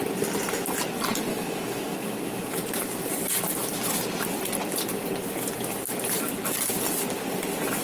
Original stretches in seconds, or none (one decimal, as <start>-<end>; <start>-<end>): 0.0-1.3; 2.5-7.8